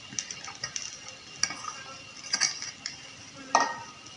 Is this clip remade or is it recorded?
recorded